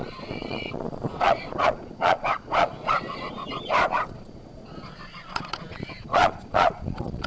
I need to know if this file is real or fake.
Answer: fake